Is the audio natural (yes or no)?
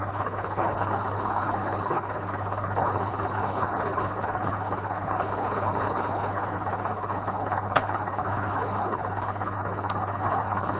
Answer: no